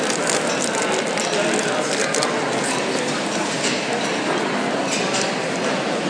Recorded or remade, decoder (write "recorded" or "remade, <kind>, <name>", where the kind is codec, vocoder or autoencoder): recorded